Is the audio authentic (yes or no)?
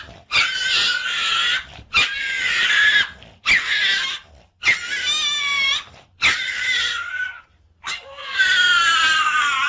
yes